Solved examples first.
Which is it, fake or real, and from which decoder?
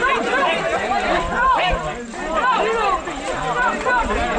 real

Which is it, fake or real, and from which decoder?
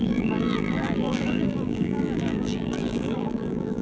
fake, vocoder, BigVGAN v2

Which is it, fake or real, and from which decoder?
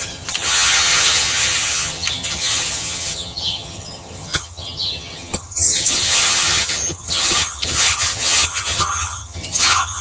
fake, vocoder, HiFi-GAN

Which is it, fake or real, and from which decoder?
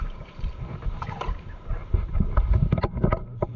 fake, vocoder, BigVGAN v2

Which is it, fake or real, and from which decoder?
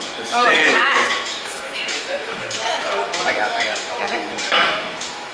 fake, autoencoder, DAC-VAE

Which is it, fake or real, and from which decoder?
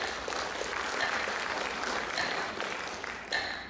real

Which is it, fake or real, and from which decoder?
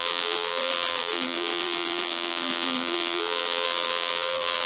fake, vocoder, BigVGAN v2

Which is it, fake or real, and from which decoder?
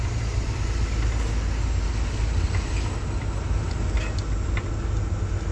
real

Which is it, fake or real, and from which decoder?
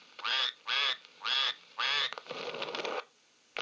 real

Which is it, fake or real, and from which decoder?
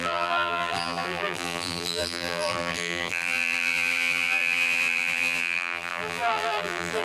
fake, vocoder, BigVGAN v2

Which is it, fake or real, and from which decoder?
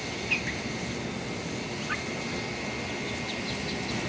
real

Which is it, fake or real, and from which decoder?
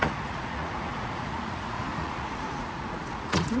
fake, vocoder, Vocos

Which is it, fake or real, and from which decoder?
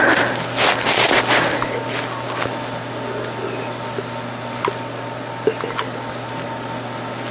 real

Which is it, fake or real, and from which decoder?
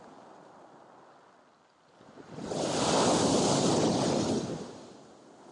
real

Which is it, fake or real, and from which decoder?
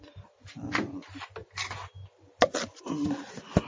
real